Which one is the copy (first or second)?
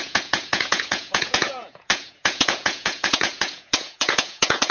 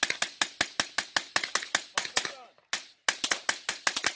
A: first